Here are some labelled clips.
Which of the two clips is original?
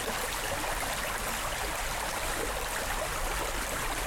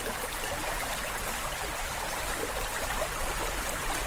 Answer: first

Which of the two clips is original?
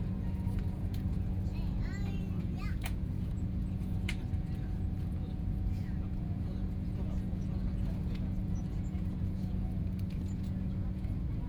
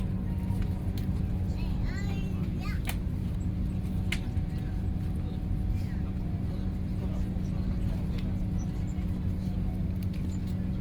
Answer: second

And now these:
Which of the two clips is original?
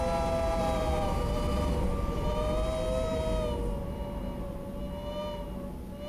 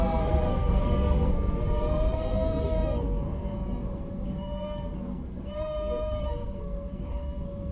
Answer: first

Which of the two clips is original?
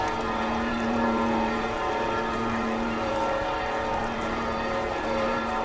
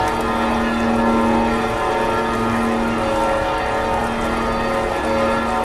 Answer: second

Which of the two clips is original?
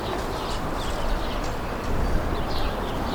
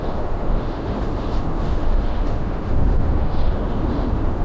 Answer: first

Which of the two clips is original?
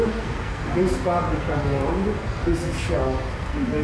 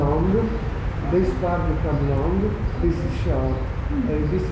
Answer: second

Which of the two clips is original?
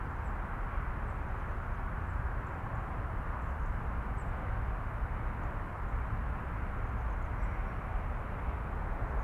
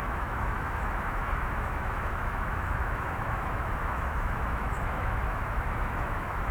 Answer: first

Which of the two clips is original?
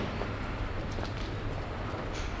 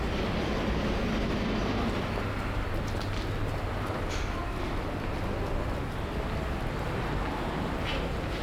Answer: second